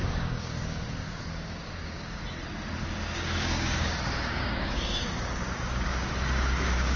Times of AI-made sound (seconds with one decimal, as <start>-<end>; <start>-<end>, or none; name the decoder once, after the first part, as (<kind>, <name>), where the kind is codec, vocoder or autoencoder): 0.0-2.2 (codec, DAC); 2.8-7.0